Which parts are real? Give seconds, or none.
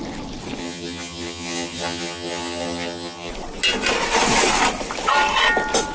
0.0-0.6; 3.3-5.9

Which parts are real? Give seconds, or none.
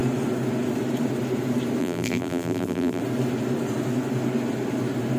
0.0-1.8; 3.0-5.2